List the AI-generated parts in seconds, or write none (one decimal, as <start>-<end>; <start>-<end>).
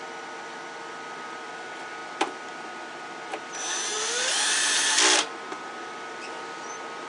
none